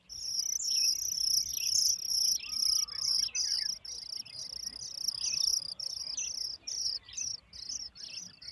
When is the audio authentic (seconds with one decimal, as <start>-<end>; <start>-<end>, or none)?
0.0-1.5; 2.1-5.5; 6.0-8.5